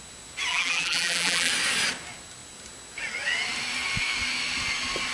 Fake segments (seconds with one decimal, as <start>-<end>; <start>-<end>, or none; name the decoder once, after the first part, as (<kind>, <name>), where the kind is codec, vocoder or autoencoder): 0.5-1.5 (vocoder, BigVGAN v2)